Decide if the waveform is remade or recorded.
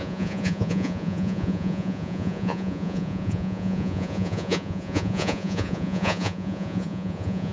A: remade